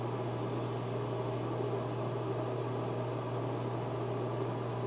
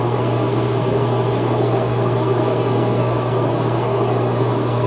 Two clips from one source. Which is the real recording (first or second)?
first